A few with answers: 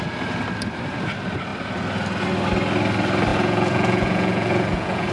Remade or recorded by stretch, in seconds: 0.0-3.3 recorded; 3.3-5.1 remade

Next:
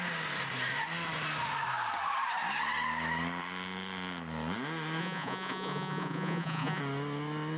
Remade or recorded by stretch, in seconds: 0.0-5.0 recorded; 5.0-6.8 remade; 6.8-7.6 recorded

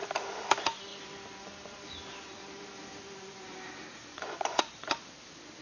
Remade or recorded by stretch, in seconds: 0.0-4.1 recorded; 4.1-4.7 remade; 4.7-5.6 recorded

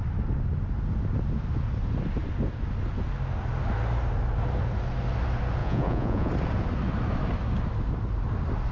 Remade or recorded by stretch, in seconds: 0.0-5.6 recorded; 5.6-6.3 remade; 6.3-8.7 recorded

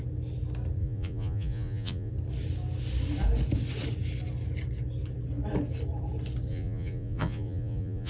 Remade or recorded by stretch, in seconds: 0.0-0.8 recorded; 0.8-2.1 remade; 2.1-6.5 recorded; 6.5-8.1 remade

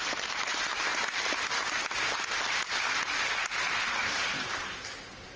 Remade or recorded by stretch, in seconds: 0.0-5.4 recorded

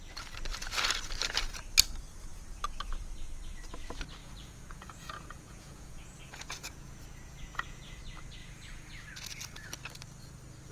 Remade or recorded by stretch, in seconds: 0.0-4.2 recorded; 4.2-8.0 remade; 8.0-8.4 recorded; 8.4-9.1 remade; 9.1-10.7 recorded

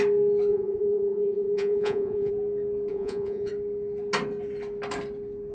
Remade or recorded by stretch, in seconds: 0.0-0.5 recorded; 0.5-2.3 remade; 2.3-2.9 recorded; 2.9-3.5 remade; 3.5-5.5 recorded